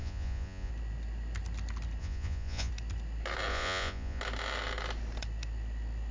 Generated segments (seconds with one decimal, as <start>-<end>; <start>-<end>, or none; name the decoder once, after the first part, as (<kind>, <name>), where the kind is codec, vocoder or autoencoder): 0.0-0.7 (vocoder, Vocos); 2.0-2.7; 3.5-4.2